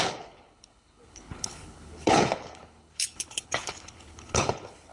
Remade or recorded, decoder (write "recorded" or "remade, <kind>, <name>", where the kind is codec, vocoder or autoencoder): remade, codec, HILCodec